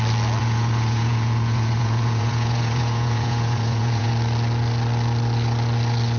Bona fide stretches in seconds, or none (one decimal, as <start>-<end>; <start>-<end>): 0.0-0.4; 4.1-6.2